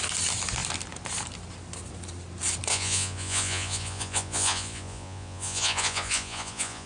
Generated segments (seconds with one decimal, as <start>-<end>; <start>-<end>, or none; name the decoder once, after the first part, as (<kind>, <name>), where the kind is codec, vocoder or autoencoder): 2.7-6.9 (vocoder, Vocos)